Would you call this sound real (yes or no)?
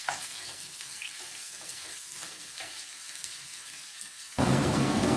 no